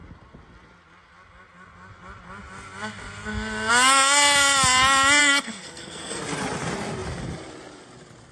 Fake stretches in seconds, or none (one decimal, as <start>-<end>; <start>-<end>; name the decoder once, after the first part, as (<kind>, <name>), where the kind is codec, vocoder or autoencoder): 5.2-6.2 (codec, SNAC)

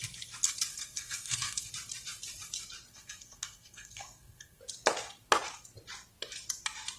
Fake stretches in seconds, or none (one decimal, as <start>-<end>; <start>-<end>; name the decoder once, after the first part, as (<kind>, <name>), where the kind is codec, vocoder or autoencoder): 0.7-1.7 (codec, SNAC); 2.9-4.6